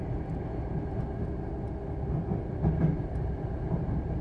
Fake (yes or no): no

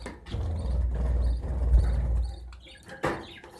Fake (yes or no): no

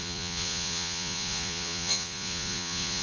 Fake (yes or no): yes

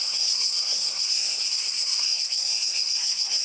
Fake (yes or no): yes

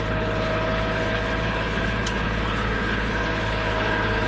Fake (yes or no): yes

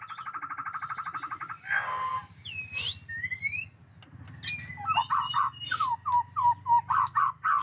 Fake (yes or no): no